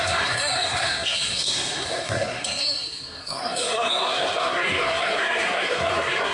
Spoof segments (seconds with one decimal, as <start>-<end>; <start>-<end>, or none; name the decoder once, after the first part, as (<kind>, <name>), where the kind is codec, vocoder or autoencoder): 0.0-6.3 (codec, SNAC)